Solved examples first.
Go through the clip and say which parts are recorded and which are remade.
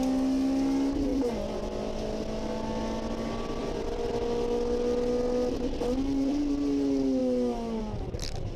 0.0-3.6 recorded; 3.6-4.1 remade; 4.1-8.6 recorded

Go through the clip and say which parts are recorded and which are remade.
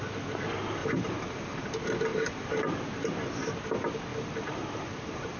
0.0-0.8 recorded; 0.8-1.6 remade; 1.6-2.1 recorded; 2.1-2.6 remade; 2.6-4.1 recorded; 4.1-5.4 remade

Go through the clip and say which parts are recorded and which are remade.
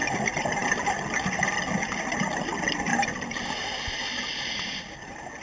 0.0-2.9 recorded; 2.9-4.1 remade; 4.1-5.4 recorded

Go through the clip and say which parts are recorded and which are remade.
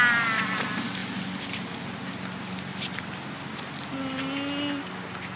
0.0-5.4 recorded